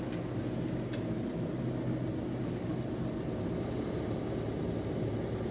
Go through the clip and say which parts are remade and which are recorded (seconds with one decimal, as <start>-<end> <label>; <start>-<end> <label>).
0.0-5.5 recorded